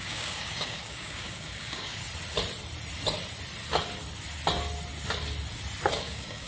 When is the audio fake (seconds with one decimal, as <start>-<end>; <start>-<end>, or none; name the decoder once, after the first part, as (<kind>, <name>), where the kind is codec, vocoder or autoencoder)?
0.0-2.0 (codec, DAC); 5.9-6.5